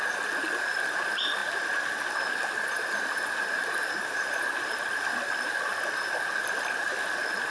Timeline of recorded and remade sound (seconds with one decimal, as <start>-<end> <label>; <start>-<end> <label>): 0.0-7.5 recorded